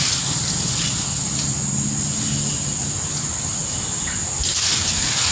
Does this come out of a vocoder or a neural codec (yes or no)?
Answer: no